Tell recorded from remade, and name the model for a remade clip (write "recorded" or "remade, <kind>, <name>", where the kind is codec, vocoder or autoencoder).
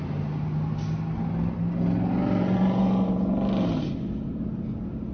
recorded